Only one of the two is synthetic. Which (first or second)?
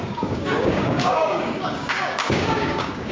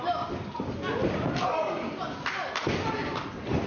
first